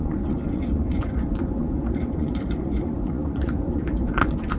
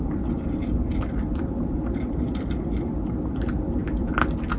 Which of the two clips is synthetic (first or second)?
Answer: first